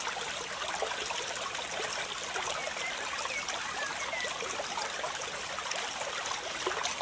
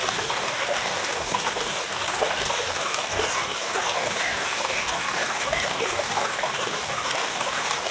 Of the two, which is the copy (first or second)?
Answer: second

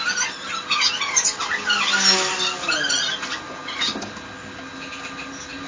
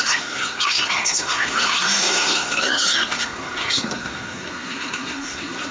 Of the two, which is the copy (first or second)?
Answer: second